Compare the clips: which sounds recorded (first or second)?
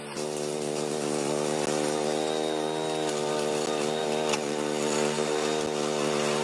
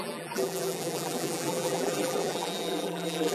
first